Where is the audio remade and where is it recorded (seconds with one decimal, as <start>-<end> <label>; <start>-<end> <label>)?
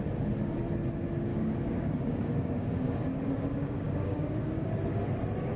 0.0-1.3 recorded; 1.3-4.7 remade; 4.7-5.6 recorded